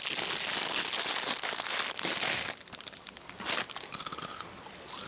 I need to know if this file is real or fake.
real